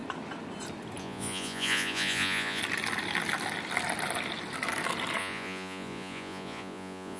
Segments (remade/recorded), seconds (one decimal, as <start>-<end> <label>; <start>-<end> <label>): 0.0-1.0 recorded; 1.0-2.6 remade; 2.6-5.2 recorded; 5.2-7.2 remade